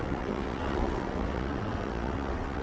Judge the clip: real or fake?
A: fake